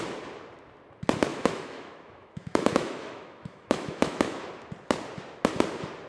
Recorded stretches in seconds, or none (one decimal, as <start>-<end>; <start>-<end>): 0.0-1.3; 4.4-6.1